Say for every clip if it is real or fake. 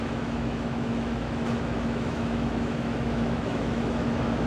fake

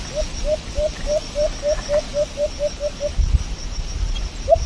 real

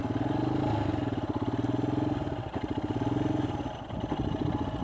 real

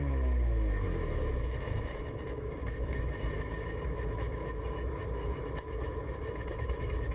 fake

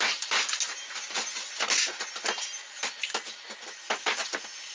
real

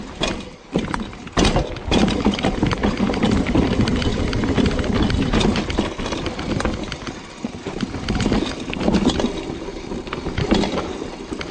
real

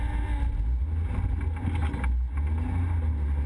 real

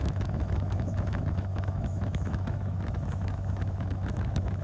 fake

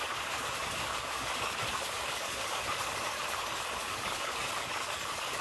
fake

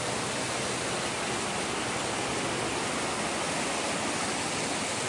real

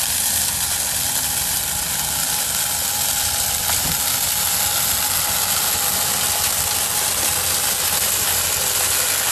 real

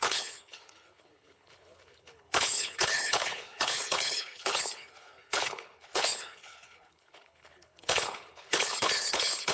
fake